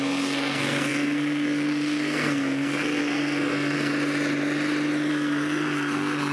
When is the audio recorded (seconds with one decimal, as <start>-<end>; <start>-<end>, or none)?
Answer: 3.9-5.1